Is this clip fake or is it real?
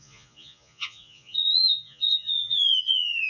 fake